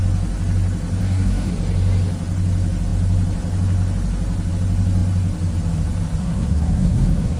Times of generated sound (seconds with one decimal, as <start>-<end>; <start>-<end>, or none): 1.0-1.5; 6.2-7.4